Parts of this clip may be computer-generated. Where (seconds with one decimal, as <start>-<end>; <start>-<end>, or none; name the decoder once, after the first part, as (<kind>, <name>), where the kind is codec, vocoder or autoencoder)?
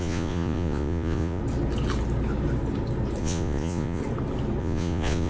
0.0-1.4 (vocoder, Vocos); 3.2-4.0; 4.6-5.3